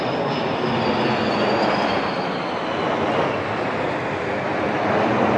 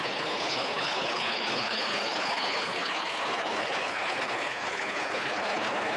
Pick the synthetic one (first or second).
second